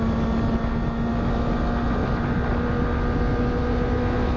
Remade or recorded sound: recorded